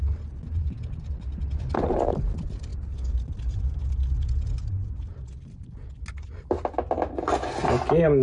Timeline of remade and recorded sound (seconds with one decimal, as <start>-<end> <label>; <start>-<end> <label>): 0.0-8.2 recorded